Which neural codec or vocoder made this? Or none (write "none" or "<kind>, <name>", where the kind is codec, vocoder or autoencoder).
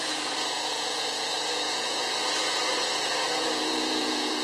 vocoder, Vocos